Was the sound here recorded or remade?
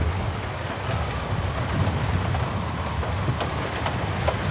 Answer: recorded